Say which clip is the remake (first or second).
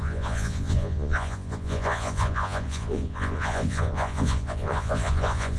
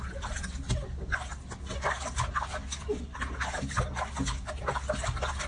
first